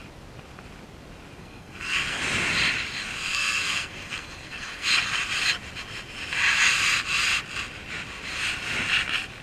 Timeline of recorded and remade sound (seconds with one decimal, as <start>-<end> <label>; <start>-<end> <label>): 0.0-1.4 recorded; 1.4-2.2 remade; 2.2-3.3 recorded; 3.3-4.9 remade; 4.9-9.4 recorded

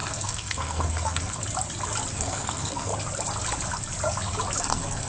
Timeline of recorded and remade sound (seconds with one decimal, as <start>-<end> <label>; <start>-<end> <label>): 0.0-1.4 remade; 1.4-2.1 recorded; 2.1-2.9 remade; 2.9-4.6 recorded; 4.6-5.1 remade

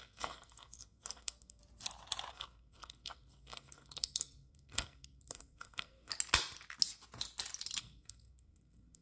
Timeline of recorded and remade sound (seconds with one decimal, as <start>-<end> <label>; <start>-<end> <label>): 0.0-1.6 remade; 1.6-2.3 recorded; 2.3-6.1 remade; 6.1-7.8 recorded; 7.8-9.0 remade

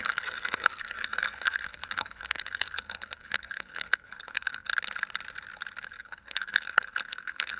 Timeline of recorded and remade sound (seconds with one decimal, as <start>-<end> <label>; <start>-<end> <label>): 0.0-4.7 remade; 4.7-5.8 recorded; 5.8-7.6 remade

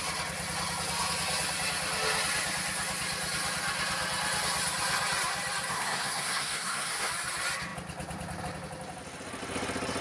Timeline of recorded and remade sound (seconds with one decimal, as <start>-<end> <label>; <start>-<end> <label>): 0.0-5.7 recorded; 5.7-7.1 remade; 7.1-10.0 recorded

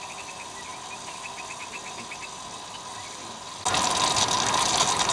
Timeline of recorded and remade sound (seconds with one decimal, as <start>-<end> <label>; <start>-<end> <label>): 0.0-5.1 recorded